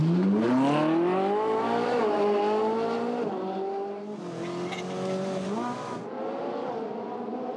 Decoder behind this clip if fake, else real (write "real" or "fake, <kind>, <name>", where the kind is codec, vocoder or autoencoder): real